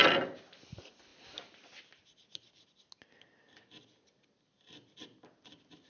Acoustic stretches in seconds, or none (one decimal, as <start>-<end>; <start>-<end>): 0.0-5.9